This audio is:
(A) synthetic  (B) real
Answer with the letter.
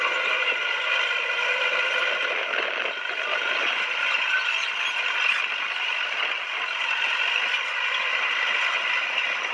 B